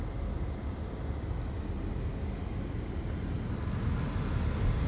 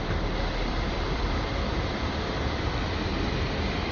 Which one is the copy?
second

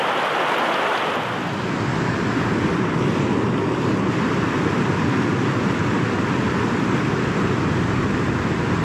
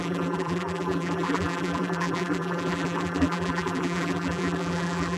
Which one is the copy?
second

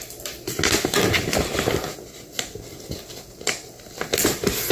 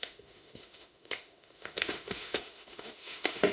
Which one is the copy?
second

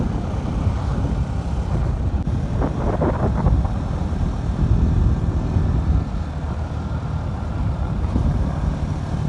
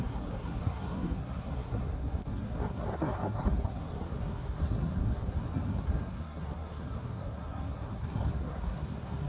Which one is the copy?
second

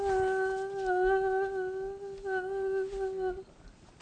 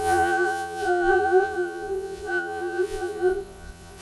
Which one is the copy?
second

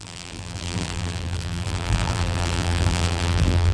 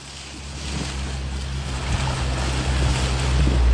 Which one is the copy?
first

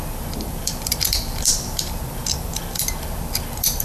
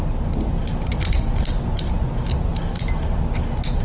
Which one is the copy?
first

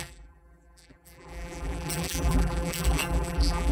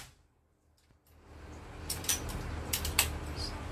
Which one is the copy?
first